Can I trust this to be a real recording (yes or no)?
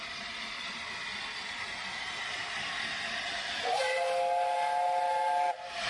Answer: yes